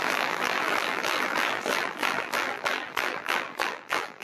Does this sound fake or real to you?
fake